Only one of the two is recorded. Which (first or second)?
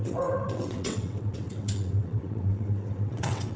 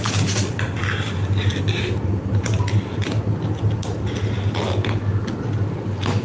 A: second